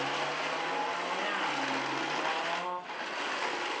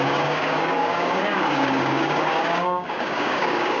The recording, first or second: first